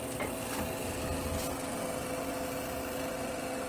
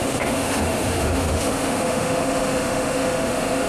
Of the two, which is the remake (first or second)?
second